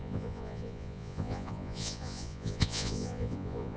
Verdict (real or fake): fake